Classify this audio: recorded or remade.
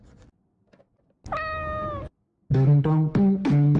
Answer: recorded